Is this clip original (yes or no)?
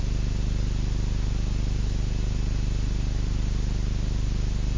yes